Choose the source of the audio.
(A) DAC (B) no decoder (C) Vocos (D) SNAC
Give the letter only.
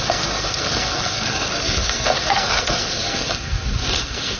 D